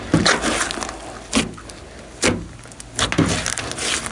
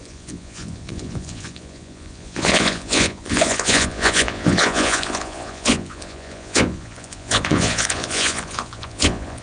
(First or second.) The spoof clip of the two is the second